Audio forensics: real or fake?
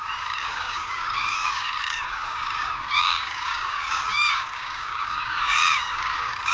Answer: fake